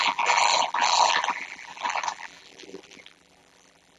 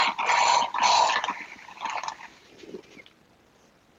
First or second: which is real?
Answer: second